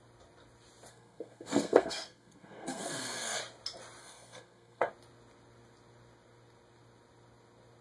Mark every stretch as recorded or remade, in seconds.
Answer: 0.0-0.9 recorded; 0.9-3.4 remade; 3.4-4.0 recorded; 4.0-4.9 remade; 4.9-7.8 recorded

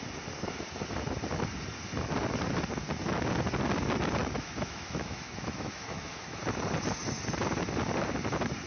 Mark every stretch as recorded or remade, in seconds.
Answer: 0.0-4.2 recorded; 4.2-6.4 remade; 6.4-8.7 recorded